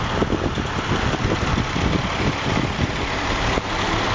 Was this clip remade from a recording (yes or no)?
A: no